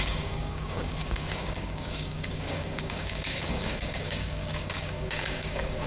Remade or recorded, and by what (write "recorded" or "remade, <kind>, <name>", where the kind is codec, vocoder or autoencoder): remade, codec, DAC